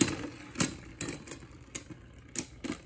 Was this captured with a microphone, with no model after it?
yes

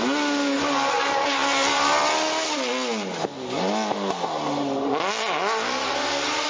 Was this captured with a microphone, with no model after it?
yes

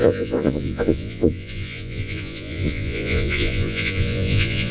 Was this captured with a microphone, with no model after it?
no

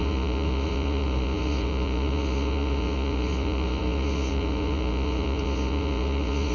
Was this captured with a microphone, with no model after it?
no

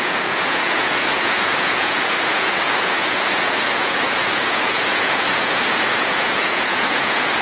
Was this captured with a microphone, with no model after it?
no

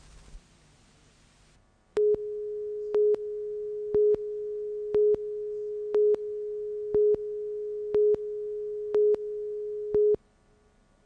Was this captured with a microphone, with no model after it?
yes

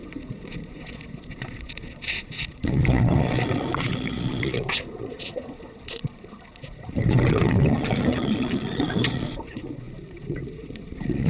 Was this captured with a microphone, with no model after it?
no